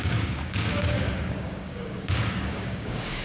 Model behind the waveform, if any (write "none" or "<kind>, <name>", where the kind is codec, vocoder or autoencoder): codec, DAC